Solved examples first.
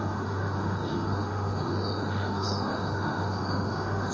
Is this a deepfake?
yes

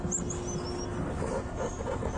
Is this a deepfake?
no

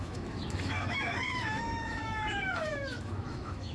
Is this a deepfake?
yes